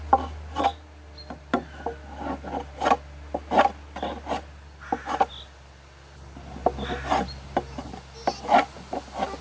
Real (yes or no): yes